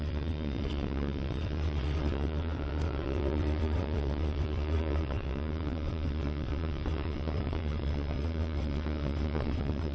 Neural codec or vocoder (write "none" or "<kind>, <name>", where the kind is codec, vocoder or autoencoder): vocoder, WaveNeXt